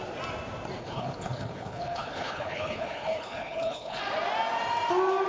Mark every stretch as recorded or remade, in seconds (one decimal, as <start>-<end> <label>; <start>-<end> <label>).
0.0-0.8 recorded; 0.8-4.0 remade; 4.0-5.3 recorded